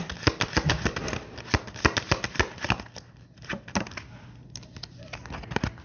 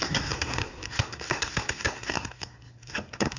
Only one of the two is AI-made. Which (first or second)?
second